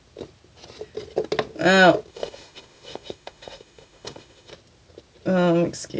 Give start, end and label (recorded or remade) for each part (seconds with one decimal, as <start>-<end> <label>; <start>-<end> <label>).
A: 0.0-2.1 recorded; 2.1-4.5 remade; 4.5-6.0 recorded